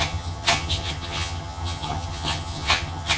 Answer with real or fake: fake